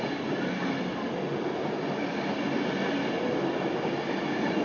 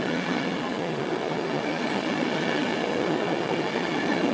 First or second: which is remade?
second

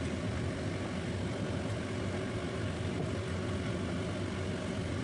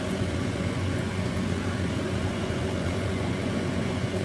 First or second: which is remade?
second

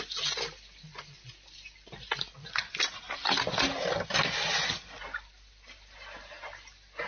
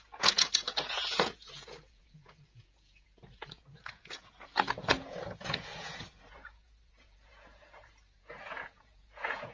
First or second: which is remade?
second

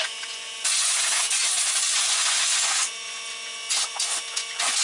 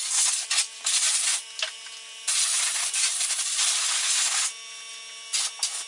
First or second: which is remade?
first